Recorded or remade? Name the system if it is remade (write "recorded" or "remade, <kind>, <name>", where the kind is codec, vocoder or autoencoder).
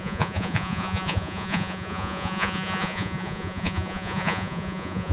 remade, vocoder, Vocos